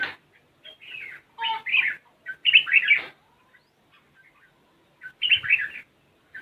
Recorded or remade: recorded